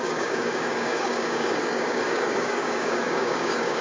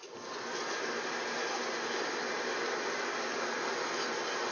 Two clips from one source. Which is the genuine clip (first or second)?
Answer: second